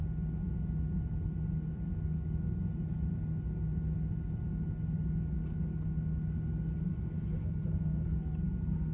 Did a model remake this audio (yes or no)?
no